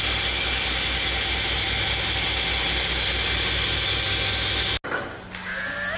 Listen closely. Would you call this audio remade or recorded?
recorded